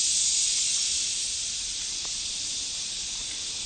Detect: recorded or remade recorded